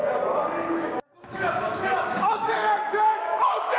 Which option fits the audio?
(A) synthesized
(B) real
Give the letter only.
A